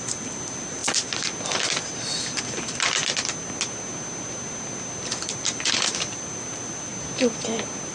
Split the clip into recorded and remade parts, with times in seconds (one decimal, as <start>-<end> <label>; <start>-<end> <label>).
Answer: 0.0-0.8 remade; 0.8-2.0 recorded; 2.0-3.0 remade; 3.0-5.2 recorded; 5.2-6.9 remade; 6.9-7.9 recorded